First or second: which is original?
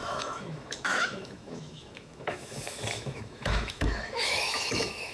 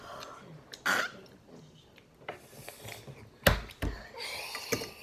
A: second